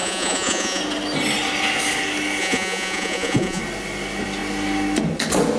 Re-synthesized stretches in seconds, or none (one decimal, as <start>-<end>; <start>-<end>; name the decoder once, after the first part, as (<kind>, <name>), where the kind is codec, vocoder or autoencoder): 0.0-0.8 (vocoder, Vocos); 2.4-3.6